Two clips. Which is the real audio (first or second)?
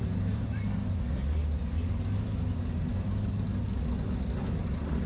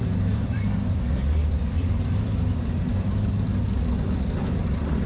first